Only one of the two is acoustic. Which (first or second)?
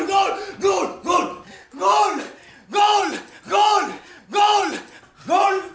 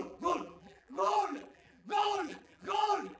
first